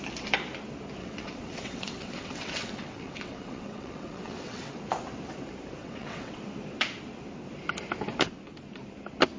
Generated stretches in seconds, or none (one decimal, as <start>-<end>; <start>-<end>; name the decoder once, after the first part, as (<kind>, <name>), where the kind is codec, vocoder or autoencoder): 1.0-4.8 (vocoder, WaveNeXt); 5.8-6.4